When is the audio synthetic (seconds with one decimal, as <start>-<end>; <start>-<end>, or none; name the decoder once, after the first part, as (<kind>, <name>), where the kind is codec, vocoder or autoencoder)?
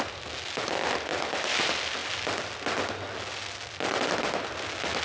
none